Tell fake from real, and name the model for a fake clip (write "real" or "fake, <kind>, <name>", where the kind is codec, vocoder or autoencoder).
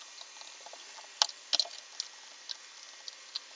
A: real